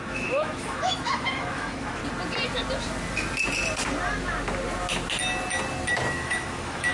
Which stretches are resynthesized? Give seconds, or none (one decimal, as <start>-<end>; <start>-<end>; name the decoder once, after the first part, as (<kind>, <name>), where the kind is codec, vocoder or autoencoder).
0.0-2.0 (autoencoder, DAC-VAE); 6.1-6.9